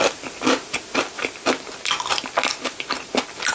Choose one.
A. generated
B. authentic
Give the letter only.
B